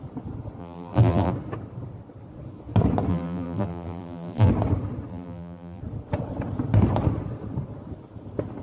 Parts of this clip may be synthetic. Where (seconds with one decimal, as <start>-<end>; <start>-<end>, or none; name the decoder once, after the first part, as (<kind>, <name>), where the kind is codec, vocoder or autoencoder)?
0.6-1.3 (vocoder, BigVGAN v2); 3.1-4.5; 5.1-5.8